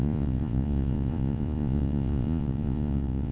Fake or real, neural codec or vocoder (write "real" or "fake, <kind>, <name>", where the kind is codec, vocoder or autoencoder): fake, vocoder, Vocos